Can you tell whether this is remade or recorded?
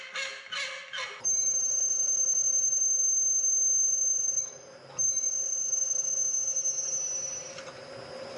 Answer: recorded